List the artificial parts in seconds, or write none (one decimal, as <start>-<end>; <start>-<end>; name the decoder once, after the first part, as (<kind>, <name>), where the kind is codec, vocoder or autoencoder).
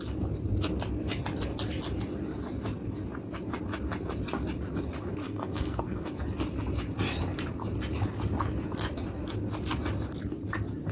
5.2-6.1 (codec, SNAC)